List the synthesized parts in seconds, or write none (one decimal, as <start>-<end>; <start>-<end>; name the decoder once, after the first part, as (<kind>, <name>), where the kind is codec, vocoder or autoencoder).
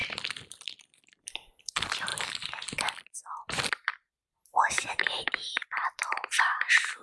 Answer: 0.0-7.0 (vocoder, BigVGAN v2)